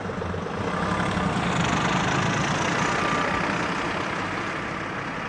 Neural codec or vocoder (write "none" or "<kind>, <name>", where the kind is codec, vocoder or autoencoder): none